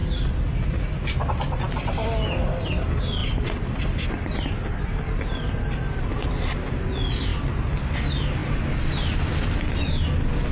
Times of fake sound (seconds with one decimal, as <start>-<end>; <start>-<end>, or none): none